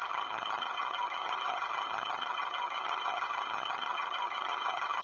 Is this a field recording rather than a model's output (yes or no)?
no